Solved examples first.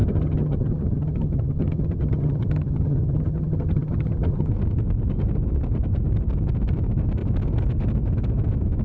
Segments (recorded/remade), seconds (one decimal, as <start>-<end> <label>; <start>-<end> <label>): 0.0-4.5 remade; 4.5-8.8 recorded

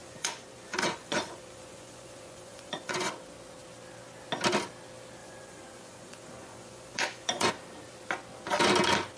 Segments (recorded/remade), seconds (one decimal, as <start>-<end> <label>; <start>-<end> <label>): 0.0-3.1 remade; 3.1-5.2 recorded; 5.2-7.5 remade; 7.5-9.2 recorded

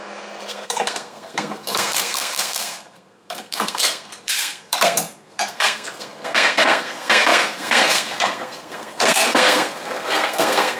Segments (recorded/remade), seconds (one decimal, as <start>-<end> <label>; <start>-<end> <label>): 0.0-10.8 remade

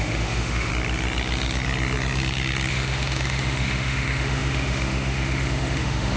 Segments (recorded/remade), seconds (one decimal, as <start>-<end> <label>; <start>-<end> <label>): 0.0-0.7 remade; 0.7-2.7 recorded; 2.7-6.2 remade